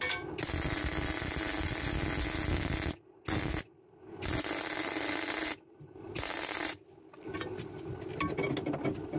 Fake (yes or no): no